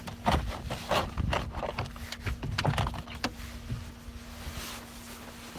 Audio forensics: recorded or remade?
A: recorded